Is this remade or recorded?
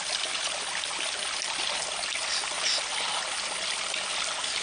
recorded